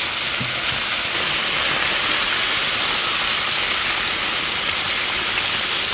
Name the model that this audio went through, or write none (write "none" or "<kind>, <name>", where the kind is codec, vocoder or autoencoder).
none